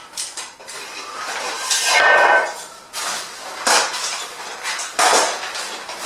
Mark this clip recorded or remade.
recorded